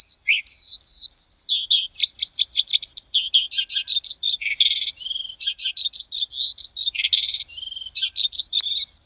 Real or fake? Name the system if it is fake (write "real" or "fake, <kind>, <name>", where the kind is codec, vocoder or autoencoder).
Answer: real